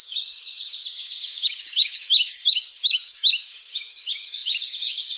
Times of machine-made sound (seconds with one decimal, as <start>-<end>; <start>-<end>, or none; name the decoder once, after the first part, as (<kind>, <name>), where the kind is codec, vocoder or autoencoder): 0.0-5.2 (codec, DAC)